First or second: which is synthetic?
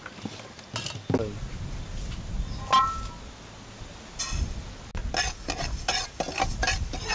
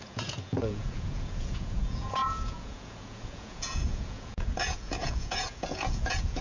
second